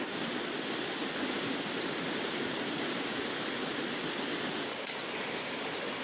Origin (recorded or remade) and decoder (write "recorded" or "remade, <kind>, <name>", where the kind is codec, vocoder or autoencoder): recorded